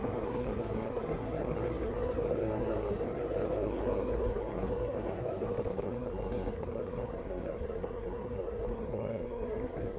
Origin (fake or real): fake